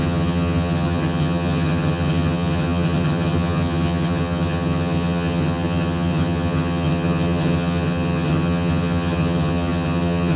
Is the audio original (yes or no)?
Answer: no